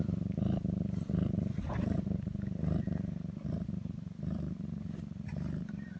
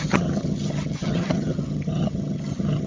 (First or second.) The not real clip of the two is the second